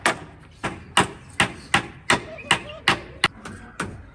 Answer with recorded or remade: recorded